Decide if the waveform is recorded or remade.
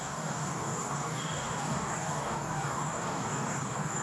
remade